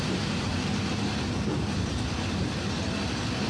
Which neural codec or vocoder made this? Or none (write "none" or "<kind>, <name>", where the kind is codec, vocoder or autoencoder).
none